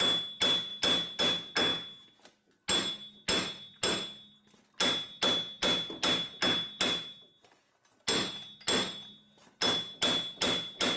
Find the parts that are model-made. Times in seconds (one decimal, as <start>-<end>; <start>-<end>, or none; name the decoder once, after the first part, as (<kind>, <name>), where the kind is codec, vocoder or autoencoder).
none